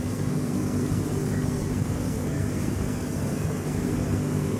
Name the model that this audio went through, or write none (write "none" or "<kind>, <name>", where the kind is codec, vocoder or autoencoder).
codec, SNAC